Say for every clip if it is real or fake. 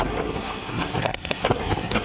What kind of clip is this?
fake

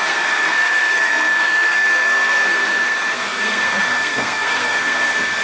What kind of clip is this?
fake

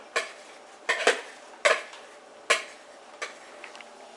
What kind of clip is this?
real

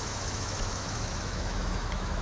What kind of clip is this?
fake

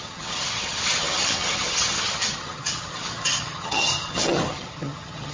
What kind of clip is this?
fake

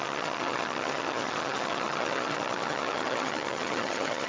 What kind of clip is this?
fake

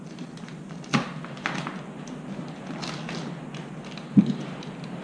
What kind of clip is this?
real